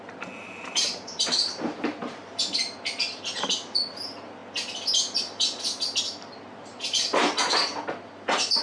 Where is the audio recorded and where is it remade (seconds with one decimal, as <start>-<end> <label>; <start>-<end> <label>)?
0.0-0.4 recorded; 0.4-2.6 remade; 2.6-8.6 recorded